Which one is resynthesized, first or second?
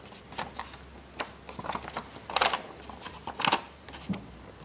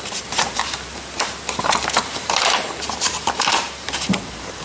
second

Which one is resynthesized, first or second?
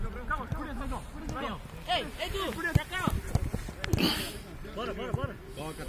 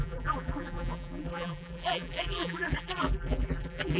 second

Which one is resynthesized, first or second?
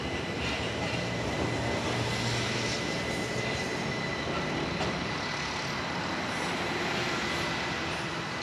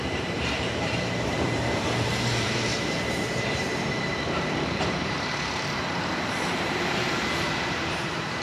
second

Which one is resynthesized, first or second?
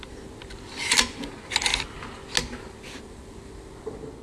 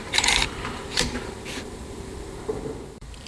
second